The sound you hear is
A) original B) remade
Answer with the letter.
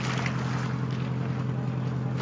A